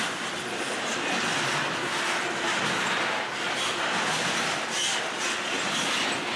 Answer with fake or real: real